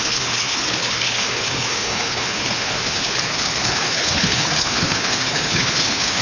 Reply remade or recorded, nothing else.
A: remade